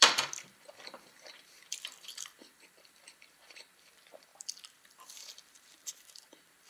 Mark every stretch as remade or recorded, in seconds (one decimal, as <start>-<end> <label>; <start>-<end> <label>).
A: 0.0-6.7 remade